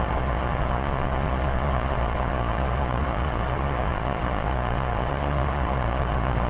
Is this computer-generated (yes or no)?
yes